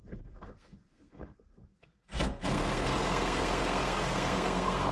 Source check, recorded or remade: remade